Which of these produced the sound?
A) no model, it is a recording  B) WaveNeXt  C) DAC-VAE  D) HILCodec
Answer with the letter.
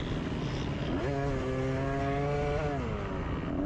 A